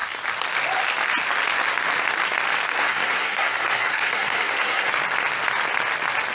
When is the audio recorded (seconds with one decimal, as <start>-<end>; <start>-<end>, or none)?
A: 0.0-2.7; 4.9-6.3